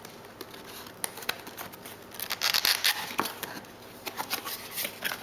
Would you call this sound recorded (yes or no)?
yes